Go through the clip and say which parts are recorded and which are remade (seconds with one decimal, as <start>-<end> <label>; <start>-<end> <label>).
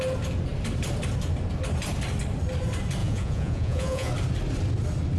0.0-3.0 recorded; 3.0-4.1 remade; 4.1-5.2 recorded